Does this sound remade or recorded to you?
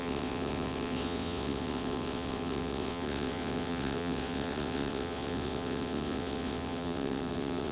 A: remade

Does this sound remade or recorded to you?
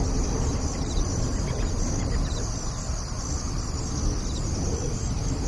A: recorded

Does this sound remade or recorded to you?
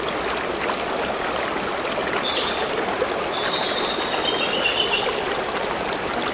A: recorded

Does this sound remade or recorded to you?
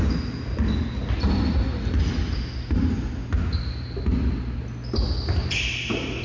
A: recorded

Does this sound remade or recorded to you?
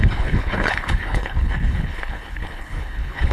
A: remade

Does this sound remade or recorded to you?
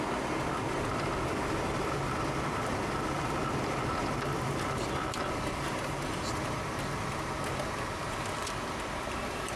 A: remade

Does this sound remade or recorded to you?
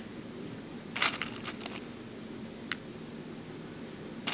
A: recorded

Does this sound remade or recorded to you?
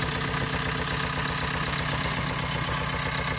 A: recorded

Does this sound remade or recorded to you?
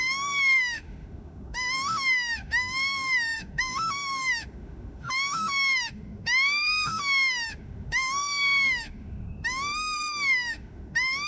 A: remade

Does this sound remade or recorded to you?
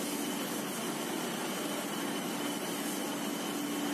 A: recorded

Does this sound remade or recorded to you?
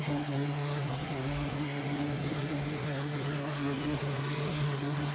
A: remade